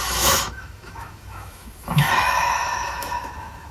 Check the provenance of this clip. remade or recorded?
remade